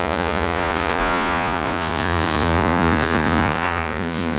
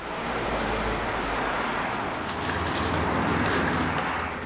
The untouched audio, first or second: second